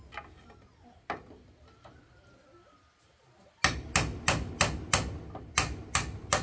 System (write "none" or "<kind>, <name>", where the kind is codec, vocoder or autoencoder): none